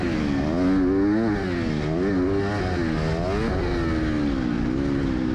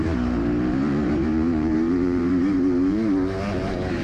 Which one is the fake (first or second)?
second